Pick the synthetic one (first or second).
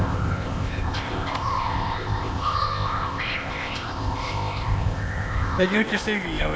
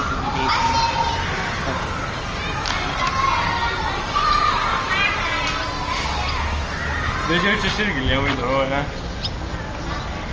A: first